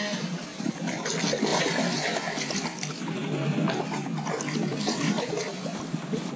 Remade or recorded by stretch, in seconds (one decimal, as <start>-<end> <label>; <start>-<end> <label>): 0.0-6.4 recorded